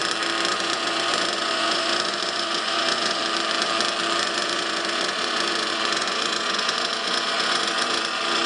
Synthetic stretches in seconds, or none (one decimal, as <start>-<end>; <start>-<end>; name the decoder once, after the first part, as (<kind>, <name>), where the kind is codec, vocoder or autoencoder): 0.5-3.2 (vocoder, Vocos); 4.2-8.5